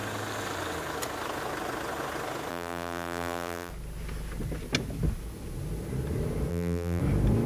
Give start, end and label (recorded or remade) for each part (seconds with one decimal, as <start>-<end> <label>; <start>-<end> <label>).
0.0-2.5 recorded; 2.5-3.7 remade; 3.7-6.5 recorded; 6.5-7.0 remade; 7.0-7.5 recorded

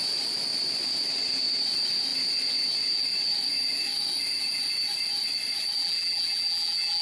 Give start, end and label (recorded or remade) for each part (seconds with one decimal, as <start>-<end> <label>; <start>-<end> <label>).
0.0-5.8 recorded; 5.8-7.0 remade

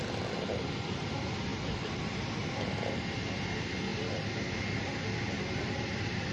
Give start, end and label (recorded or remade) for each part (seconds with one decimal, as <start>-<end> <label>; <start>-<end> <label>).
0.0-3.9 remade; 3.9-4.8 recorded; 4.8-6.3 remade

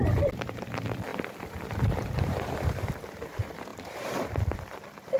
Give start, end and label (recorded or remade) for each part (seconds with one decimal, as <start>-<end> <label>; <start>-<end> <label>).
0.0-3.7 remade; 3.7-5.2 recorded

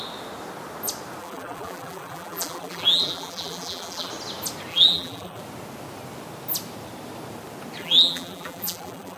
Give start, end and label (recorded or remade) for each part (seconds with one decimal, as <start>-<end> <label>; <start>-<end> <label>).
0.0-1.2 recorded; 1.2-4.1 remade; 4.1-4.7 recorded; 4.7-5.4 remade; 5.4-7.8 recorded; 7.8-9.2 remade

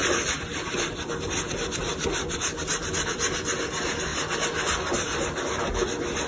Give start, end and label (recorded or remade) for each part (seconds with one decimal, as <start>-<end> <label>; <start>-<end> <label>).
0.0-1.8 remade; 1.8-2.6 recorded; 2.6-3.2 remade; 3.2-4.1 recorded; 4.1-5.6 remade; 5.6-6.3 recorded